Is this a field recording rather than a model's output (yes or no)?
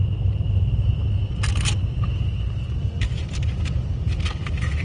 yes